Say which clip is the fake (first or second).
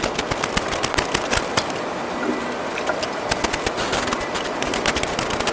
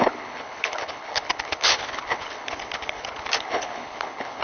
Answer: second